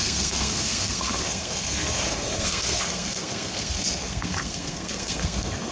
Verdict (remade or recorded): remade